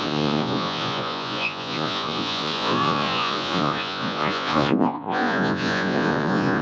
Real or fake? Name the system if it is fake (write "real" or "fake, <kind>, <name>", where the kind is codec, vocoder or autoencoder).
fake, vocoder, Vocos